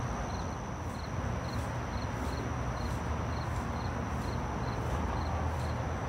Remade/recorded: recorded